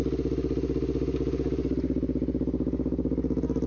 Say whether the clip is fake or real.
real